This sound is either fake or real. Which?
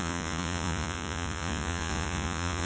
fake